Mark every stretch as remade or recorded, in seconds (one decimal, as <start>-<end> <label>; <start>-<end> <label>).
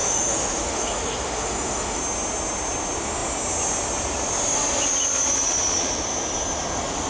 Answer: 0.0-2.0 remade; 2.0-7.1 recorded